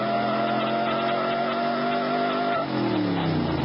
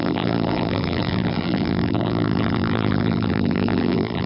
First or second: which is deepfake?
second